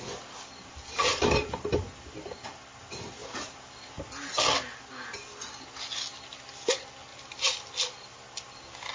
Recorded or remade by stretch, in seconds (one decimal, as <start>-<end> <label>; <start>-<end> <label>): 0.0-1.1 recorded; 1.1-2.1 remade; 2.1-3.2 recorded; 3.2-4.0 remade; 4.0-7.1 recorded; 7.1-7.7 remade; 7.7-8.9 recorded